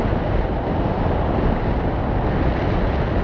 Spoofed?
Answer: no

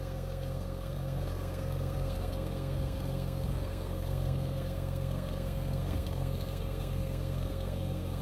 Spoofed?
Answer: yes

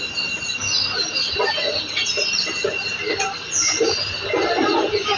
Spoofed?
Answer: no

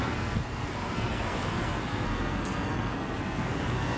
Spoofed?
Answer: yes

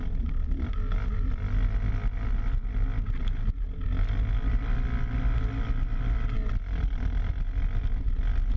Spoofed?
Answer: no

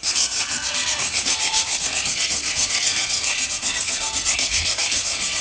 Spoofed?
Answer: yes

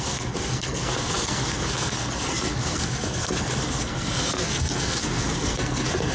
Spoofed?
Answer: yes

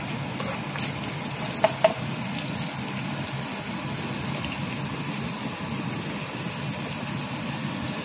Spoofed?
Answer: no